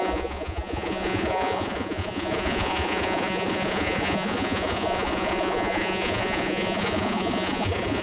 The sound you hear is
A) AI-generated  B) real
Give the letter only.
A